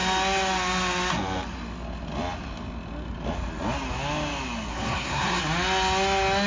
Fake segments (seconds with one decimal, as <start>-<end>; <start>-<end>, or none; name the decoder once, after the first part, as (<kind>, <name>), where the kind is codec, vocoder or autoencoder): 4.7-5.4 (codec, SNAC)

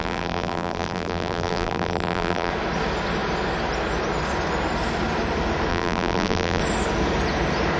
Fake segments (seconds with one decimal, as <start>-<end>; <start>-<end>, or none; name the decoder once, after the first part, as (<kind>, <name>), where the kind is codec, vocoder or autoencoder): 0.0-2.5 (vocoder, BigVGAN v2); 5.7-6.6

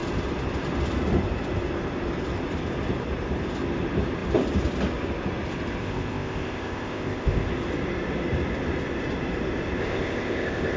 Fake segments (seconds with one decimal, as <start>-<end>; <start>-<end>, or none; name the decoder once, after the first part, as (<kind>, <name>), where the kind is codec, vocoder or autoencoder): 5.8-7.5 (codec, ZipCodec); 9.8-10.8